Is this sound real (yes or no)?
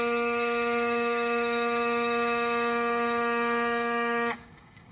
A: no